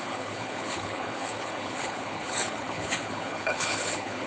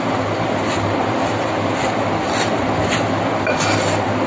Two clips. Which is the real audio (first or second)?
second